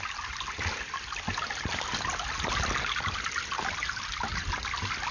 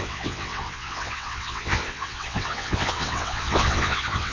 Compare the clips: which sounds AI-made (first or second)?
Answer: second